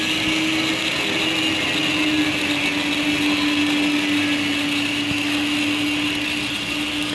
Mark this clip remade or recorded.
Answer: recorded